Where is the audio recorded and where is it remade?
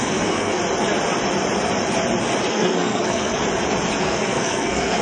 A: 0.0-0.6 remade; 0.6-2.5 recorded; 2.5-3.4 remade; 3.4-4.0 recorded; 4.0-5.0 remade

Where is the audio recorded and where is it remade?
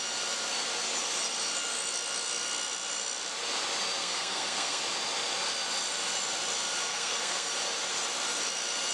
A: 0.0-4.0 recorded; 4.0-4.8 remade; 4.8-6.9 recorded; 6.9-7.5 remade; 7.5-8.9 recorded